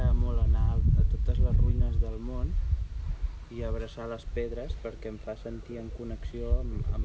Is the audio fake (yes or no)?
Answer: no